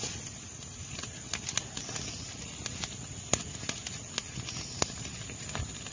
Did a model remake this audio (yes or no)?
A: no